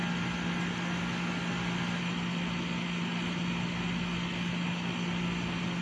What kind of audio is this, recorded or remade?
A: recorded